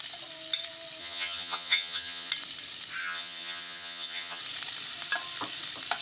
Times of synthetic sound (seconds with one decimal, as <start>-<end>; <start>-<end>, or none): 1.0-2.3; 3.0-4.4